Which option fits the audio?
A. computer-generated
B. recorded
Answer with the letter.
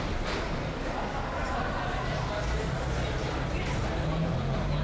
B